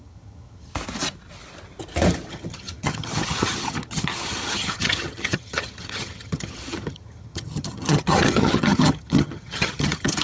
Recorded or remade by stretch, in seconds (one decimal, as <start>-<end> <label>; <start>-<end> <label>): 0.0-0.7 remade; 0.7-2.3 recorded; 2.3-10.2 remade